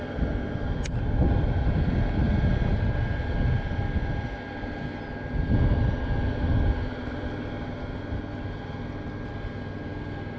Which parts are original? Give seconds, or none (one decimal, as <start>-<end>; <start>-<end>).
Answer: 0.0-10.4